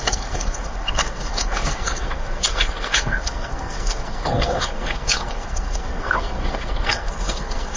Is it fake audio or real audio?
fake